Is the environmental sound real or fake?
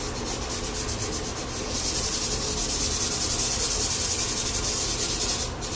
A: real